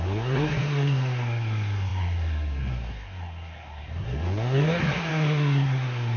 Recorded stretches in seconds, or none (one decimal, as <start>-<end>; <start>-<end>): none